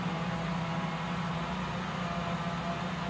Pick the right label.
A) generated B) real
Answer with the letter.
B